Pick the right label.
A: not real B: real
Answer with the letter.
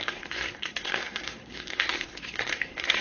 A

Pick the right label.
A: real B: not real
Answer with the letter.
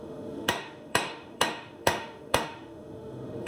B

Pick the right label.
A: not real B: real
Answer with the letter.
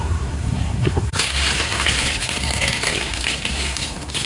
A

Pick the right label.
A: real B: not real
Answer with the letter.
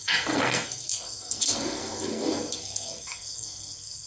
B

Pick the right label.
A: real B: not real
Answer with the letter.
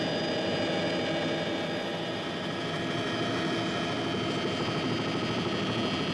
A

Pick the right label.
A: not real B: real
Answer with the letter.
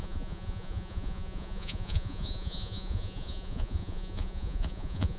A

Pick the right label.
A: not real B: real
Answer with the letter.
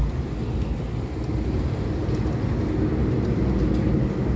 B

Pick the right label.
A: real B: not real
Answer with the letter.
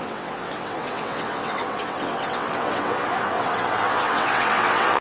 B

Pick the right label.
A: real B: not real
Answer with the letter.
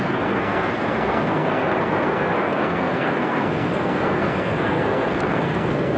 B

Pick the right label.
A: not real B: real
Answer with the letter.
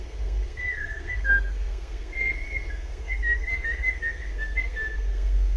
A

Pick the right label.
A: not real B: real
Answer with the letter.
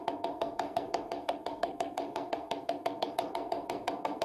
A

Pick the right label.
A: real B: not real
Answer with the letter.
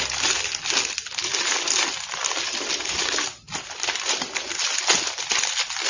A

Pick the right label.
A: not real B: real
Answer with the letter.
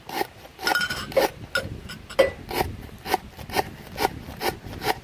B